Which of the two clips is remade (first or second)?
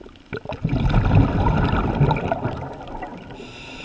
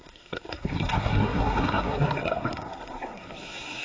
second